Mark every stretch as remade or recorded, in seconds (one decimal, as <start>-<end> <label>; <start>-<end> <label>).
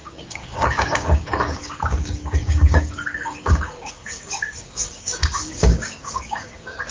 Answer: 0.0-6.9 remade